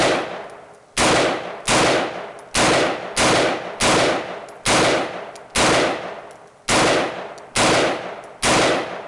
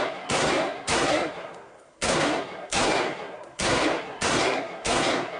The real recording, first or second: first